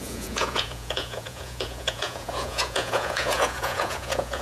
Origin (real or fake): fake